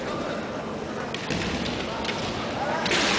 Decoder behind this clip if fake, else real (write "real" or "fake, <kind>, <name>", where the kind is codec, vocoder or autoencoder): real